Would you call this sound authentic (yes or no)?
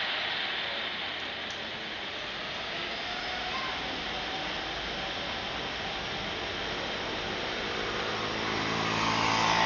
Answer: yes